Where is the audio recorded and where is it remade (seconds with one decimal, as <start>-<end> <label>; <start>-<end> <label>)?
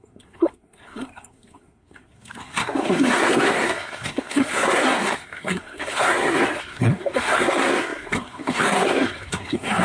0.0-9.8 remade